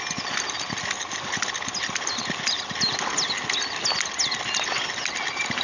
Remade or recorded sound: recorded